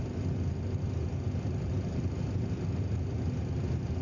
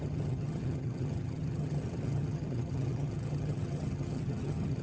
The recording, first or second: first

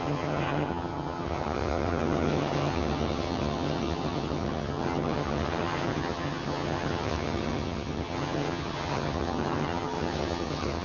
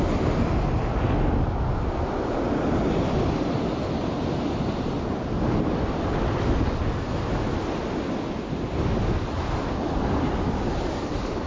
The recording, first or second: second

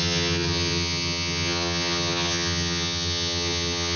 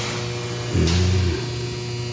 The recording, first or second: second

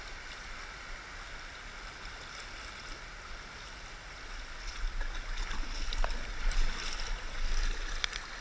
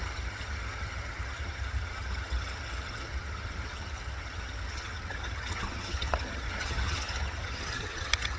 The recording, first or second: first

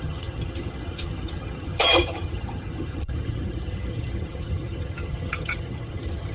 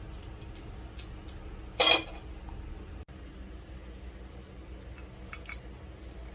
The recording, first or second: second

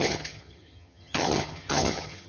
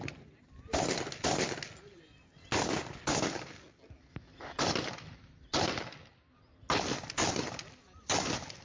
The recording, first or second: second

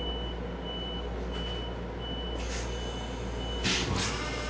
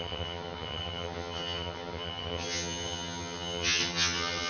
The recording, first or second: first